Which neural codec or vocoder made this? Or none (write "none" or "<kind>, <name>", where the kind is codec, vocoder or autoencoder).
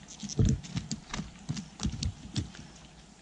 none